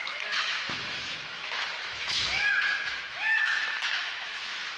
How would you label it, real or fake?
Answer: fake